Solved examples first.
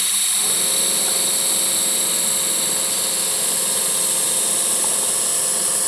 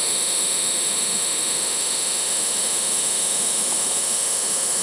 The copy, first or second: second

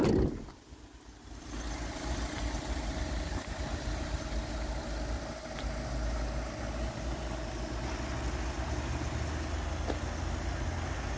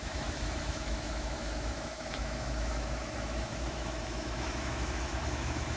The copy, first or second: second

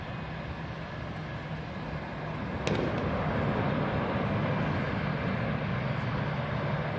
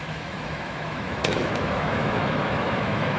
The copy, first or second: second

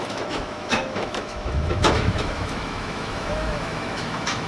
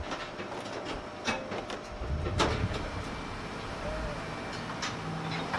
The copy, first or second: first